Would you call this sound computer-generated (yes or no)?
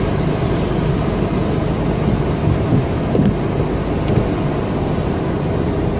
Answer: no